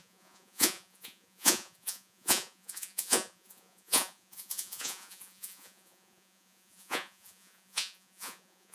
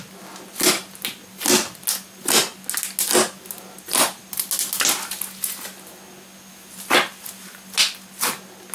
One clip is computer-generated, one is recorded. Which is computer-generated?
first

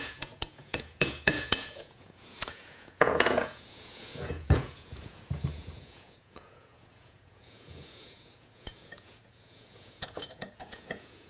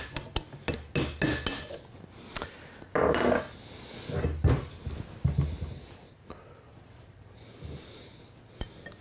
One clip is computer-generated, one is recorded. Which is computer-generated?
first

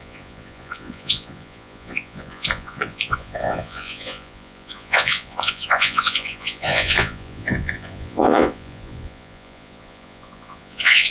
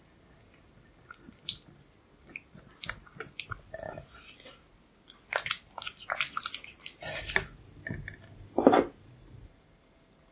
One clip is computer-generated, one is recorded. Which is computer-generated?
first